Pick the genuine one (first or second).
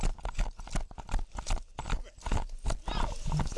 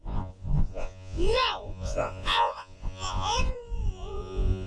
first